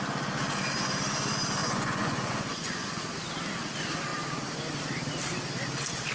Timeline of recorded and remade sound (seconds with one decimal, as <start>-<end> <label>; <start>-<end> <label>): 0.0-1.6 recorded; 1.6-3.0 remade; 3.0-6.1 recorded

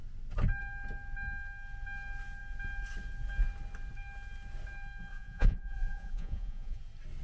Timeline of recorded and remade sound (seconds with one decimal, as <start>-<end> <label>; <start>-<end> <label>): 0.0-5.1 recorded; 5.1-6.8 remade; 6.8-7.2 recorded

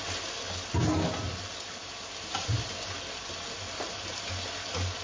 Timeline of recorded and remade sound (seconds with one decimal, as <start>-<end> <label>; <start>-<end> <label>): 0.0-5.0 recorded

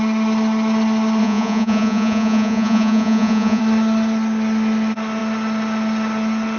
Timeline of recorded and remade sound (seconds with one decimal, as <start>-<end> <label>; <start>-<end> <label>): 0.0-1.2 recorded; 1.2-3.6 remade; 3.6-6.6 recorded

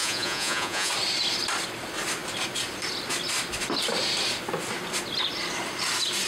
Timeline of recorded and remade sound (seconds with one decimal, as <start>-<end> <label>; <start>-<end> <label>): 0.0-0.9 remade; 0.9-6.3 recorded

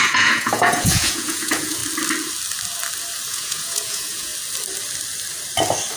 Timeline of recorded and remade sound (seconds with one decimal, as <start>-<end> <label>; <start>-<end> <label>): 0.0-1.8 remade; 1.8-3.3 recorded; 3.3-4.3 remade; 4.3-6.0 recorded

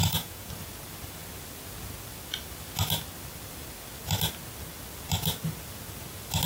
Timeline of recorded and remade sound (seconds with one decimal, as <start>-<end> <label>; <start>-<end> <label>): 0.0-0.5 remade; 0.5-6.5 recorded

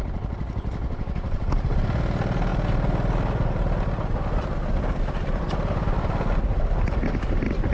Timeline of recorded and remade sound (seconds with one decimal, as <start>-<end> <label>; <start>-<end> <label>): 0.0-0.8 recorded; 0.8-1.4 remade; 1.4-7.7 recorded